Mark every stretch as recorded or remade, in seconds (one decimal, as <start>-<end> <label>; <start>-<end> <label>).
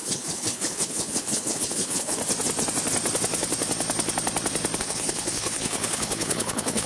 0.0-2.2 remade; 2.2-4.8 recorded; 4.8-6.9 remade